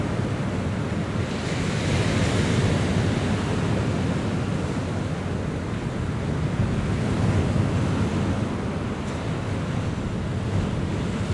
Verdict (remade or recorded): recorded